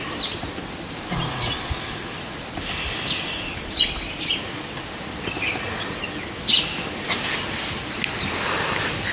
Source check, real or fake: real